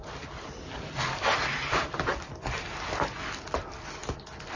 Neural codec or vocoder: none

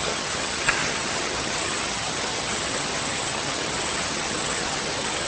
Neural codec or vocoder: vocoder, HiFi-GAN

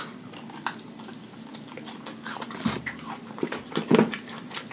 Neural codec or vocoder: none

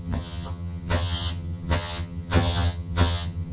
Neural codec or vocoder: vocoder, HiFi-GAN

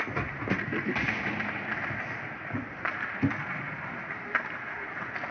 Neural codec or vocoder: none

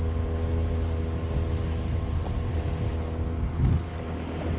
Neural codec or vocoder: none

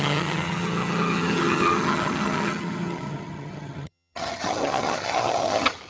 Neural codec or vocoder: vocoder, HiFi-GAN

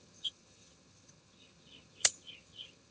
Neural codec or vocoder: vocoder, HiFi-GAN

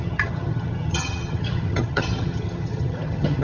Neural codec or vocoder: vocoder, HiFi-GAN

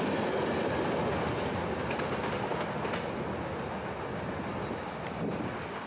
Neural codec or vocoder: none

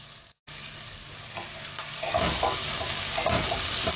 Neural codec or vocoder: none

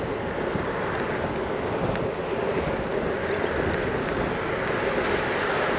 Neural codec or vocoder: none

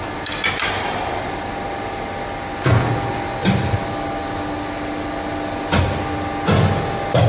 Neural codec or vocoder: none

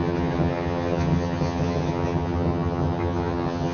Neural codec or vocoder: vocoder, HiFi-GAN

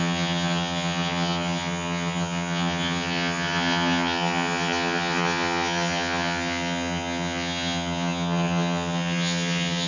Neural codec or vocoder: vocoder, HiFi-GAN